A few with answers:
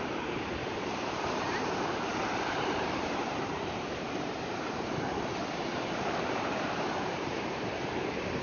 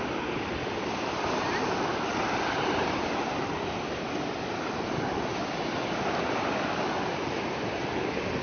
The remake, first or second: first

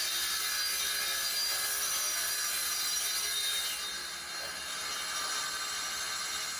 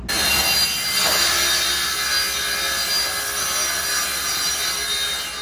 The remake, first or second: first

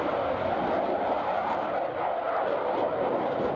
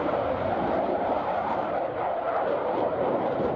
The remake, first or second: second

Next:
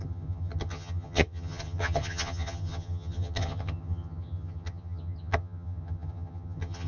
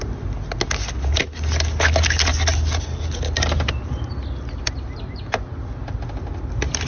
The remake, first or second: first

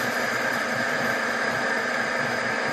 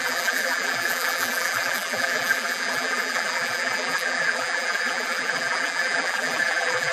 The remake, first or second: second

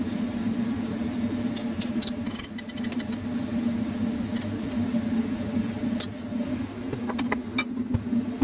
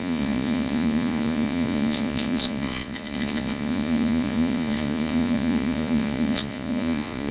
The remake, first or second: second